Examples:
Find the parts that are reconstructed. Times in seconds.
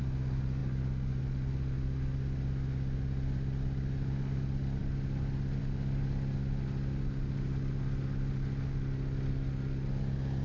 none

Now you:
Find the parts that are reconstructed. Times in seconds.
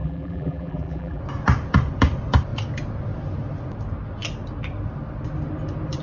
0.0-1.2 (vocoder, BigVGAN v2)